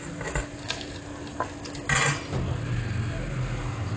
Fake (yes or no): no